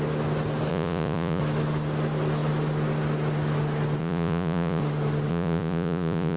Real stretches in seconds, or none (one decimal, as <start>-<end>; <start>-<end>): 0.0-0.7; 1.4-4.0; 4.8-5.3

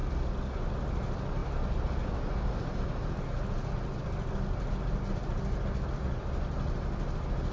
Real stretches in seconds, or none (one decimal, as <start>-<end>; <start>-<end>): 0.0-7.5

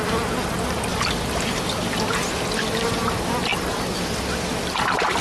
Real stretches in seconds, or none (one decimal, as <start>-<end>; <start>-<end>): 0.0-5.2

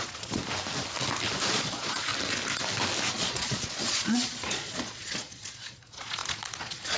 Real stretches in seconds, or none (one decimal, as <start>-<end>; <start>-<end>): 0.4-1.5; 2.1-3.1

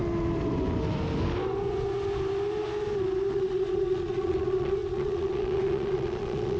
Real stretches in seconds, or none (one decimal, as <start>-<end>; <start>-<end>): 0.0-3.3

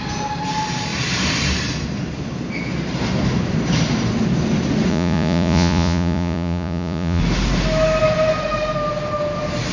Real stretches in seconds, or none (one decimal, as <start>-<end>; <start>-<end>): 0.0-4.9; 7.2-9.7